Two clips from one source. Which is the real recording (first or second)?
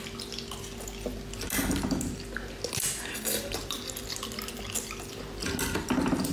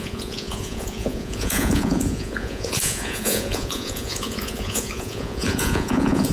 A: first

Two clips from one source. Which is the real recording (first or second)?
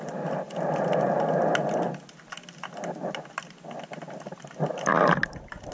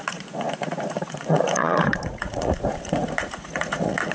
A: first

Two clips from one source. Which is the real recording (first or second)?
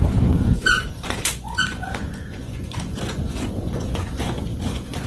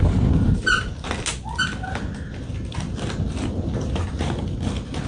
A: second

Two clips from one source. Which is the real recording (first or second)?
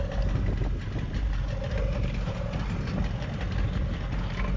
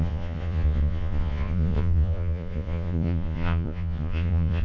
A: first